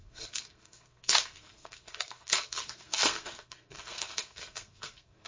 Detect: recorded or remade remade